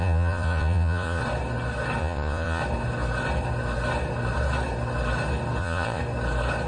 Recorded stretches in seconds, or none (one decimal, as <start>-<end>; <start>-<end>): 1.2-2.0; 2.6-5.6; 6.0-6.7